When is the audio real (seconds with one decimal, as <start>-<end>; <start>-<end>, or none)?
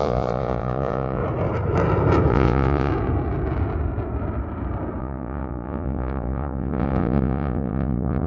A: 1.2-2.3; 2.9-5.0